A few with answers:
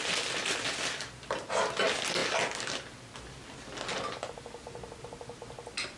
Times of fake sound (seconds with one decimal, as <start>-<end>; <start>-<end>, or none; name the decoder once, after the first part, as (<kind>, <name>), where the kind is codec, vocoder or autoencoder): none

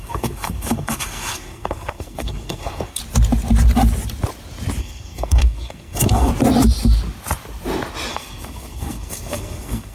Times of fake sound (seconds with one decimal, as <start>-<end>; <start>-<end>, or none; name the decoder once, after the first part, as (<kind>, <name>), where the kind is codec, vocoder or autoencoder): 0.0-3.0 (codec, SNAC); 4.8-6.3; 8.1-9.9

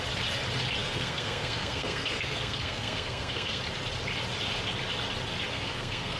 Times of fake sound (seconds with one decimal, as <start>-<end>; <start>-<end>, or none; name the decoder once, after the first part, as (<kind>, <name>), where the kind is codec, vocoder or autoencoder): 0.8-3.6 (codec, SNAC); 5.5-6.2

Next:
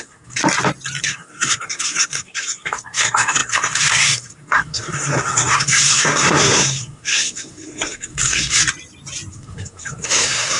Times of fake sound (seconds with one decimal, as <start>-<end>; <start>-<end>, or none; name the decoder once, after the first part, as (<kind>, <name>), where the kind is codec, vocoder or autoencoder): 0.0-0.4 (codec, SNAC); 1.0-8.6; 9.3-10.6